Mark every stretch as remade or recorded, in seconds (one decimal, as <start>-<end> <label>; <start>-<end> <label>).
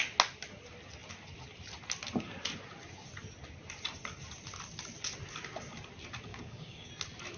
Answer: 0.0-6.3 recorded; 6.3-6.9 remade; 6.9-7.4 recorded